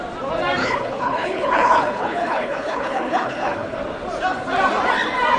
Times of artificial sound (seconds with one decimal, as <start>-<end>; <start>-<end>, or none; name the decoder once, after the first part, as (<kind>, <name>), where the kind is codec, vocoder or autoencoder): 0.6-3.8 (codec, HILCodec)